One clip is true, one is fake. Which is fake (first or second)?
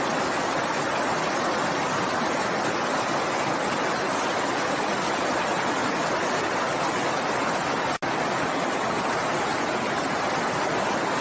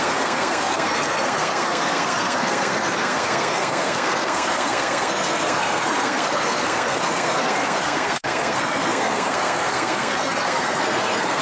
second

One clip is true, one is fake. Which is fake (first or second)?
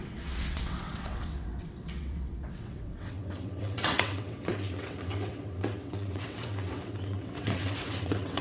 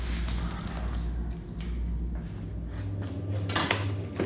first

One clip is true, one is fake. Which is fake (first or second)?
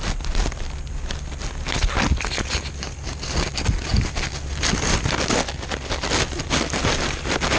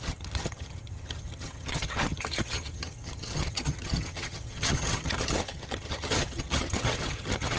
second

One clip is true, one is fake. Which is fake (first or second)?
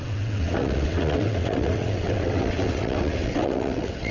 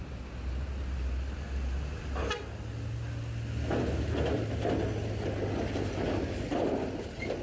first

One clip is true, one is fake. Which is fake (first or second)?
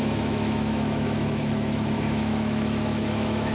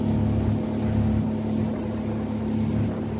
first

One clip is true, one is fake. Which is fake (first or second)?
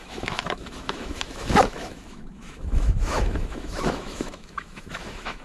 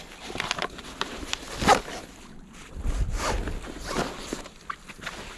first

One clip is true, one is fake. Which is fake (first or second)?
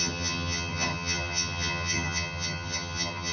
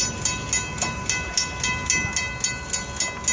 first